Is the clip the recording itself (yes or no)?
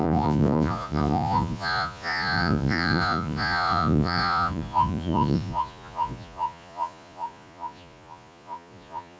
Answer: no